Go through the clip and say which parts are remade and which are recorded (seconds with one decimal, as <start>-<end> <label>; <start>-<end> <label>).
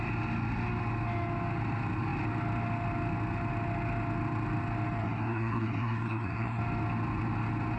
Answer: 0.0-5.0 recorded; 5.0-6.6 remade; 6.6-7.8 recorded